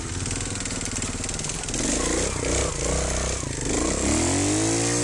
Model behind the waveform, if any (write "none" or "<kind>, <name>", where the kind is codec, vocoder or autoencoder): none